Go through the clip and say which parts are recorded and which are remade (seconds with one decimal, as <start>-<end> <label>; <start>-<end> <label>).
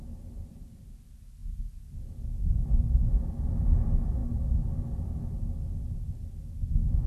0.0-7.1 recorded